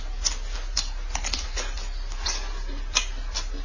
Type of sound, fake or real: real